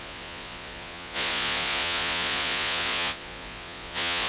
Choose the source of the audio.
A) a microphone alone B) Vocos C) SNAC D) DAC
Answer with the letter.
B